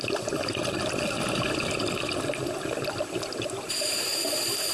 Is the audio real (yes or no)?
yes